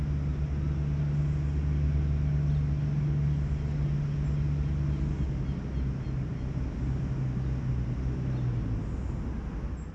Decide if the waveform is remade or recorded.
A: recorded